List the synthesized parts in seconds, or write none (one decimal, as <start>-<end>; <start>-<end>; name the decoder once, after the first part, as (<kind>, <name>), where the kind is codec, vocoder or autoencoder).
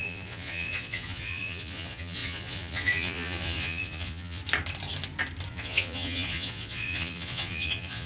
0.0-4.4 (vocoder, Vocos); 5.5-8.1